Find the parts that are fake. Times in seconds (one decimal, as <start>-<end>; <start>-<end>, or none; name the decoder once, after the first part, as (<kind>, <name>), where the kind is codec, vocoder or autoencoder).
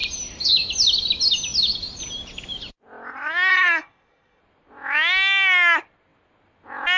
3.5-4.4 (codec, SNAC)